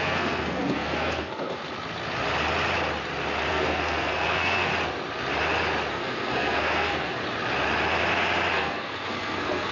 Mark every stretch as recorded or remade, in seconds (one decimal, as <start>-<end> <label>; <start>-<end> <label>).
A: 0.0-1.6 remade; 1.6-3.5 recorded; 3.5-4.7 remade; 4.7-5.9 recorded; 5.9-7.2 remade; 7.2-8.5 recorded; 8.5-9.7 remade